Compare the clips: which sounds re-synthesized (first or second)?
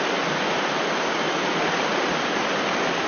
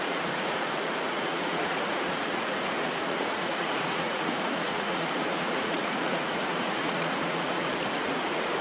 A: second